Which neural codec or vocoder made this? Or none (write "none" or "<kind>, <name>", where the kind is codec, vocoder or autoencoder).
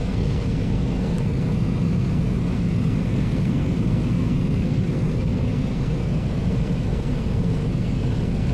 codec, SNAC